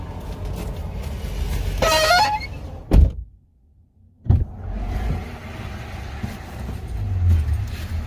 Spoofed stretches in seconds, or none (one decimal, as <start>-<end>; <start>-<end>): none